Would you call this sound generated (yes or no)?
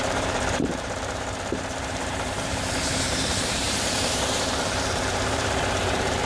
yes